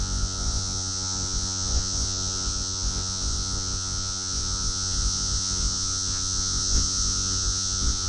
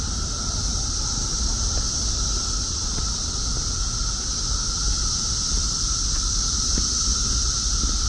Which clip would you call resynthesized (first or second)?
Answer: first